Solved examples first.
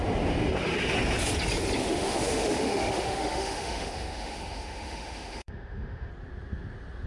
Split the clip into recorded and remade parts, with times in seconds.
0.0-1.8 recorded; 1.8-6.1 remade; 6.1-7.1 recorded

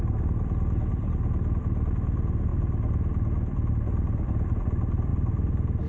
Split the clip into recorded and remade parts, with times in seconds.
0.0-5.9 remade

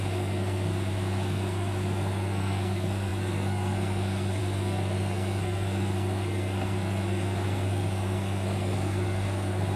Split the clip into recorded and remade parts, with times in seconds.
0.0-9.8 remade

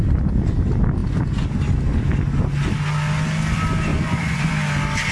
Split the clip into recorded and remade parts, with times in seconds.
0.0-3.9 recorded; 3.9-4.5 remade; 4.5-5.1 recorded

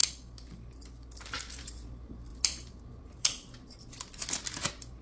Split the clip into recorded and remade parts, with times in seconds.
0.0-5.0 recorded

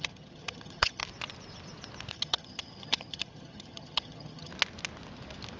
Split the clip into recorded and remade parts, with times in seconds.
0.0-1.0 remade; 1.0-2.1 recorded; 2.1-4.5 remade; 4.5-5.6 recorded

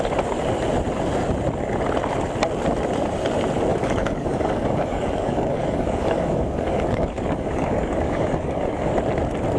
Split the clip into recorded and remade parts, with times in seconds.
0.0-3.7 recorded; 3.7-8.9 remade; 8.9-9.6 recorded

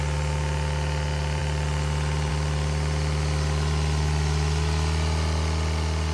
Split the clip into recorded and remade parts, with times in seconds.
0.0-6.1 recorded